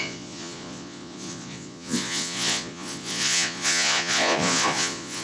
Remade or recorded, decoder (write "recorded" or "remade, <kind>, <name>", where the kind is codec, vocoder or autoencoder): remade, vocoder, Vocos